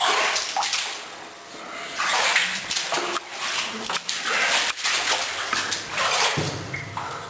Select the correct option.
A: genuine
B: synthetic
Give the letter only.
A